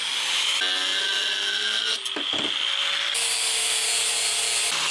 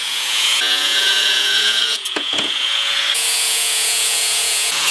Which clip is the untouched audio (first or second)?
first